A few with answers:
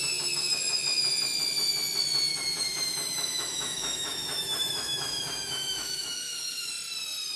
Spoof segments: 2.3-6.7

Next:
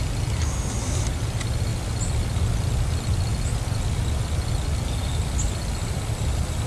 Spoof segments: none

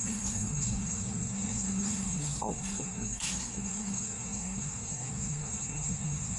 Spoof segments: 0.0-6.4

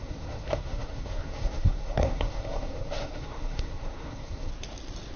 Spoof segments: 0.0-4.5

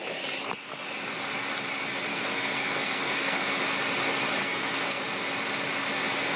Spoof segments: 2.1-3.6; 4.4-5.0

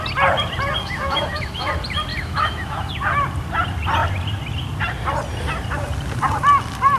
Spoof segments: 0.8-1.7; 2.1-2.9

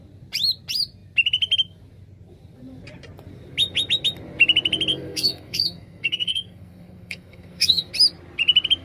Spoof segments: 4.9-7.9

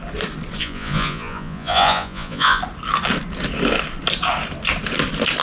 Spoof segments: 0.6-2.6